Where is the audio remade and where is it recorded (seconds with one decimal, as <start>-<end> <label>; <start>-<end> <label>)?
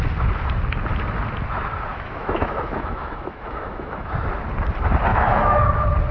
0.0-1.9 recorded; 1.9-4.1 remade; 4.1-5.1 recorded; 5.1-5.6 remade; 5.6-6.1 recorded